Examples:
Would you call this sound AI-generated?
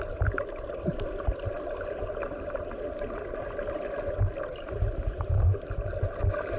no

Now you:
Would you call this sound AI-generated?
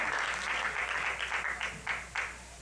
no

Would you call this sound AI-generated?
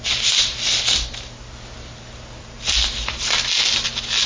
no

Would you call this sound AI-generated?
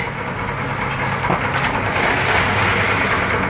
no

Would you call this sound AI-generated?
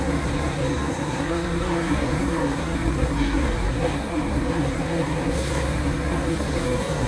yes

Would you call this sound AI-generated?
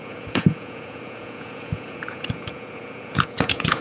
yes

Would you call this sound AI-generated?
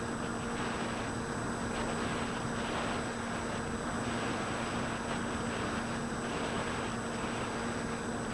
no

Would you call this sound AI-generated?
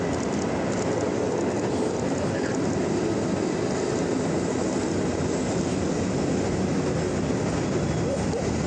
no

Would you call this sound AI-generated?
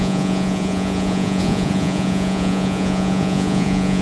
yes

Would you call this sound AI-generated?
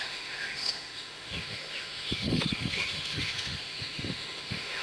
yes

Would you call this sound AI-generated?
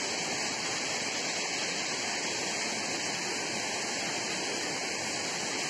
no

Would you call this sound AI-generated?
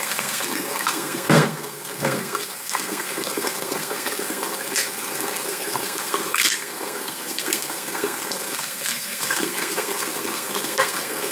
yes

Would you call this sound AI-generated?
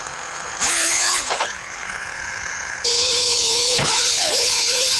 yes